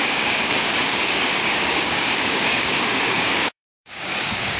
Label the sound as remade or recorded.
remade